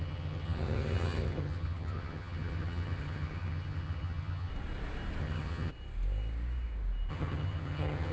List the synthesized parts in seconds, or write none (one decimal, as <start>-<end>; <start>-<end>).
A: 0.0-4.5; 5.2-5.7; 7.1-8.1